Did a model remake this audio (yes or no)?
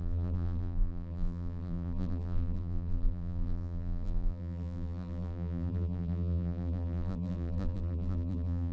yes